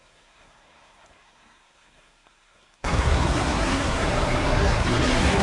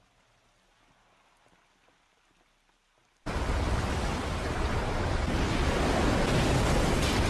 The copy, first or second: first